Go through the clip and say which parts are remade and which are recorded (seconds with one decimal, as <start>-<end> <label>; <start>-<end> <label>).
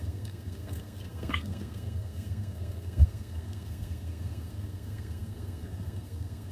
0.0-6.5 remade